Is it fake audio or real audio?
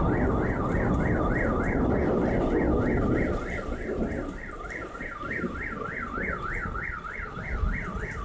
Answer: real